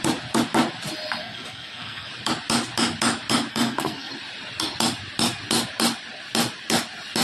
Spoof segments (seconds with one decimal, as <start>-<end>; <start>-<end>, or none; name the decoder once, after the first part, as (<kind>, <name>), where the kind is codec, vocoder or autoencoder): 1.2-2.1 (codec, SNAC); 3.5-4.1

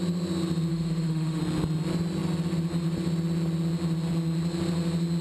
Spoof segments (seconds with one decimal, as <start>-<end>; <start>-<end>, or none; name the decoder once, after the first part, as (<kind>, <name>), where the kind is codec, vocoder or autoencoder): 0.7-1.4 (autoencoder, DAC-VAE)

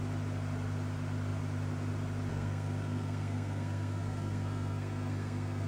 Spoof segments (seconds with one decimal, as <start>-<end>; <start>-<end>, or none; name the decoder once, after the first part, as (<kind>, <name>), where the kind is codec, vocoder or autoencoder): 2.3-5.7 (codec, SNAC)